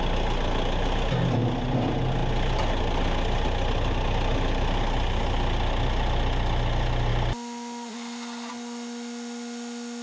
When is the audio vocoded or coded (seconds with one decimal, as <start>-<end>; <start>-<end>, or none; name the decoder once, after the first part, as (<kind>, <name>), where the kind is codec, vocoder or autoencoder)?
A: none

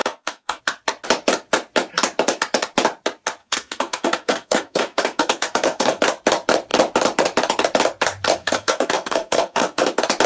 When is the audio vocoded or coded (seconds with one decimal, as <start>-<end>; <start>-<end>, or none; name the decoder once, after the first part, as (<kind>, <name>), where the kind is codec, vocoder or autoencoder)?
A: 0.0-0.6 (codec, SNAC); 3.4-6.0; 8.4-9.9